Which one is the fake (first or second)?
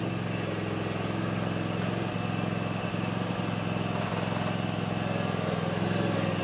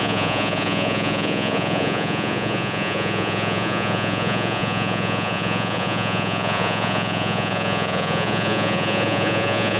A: second